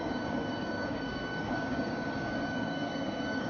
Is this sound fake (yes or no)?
yes